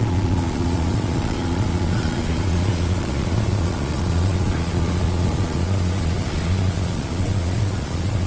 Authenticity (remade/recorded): remade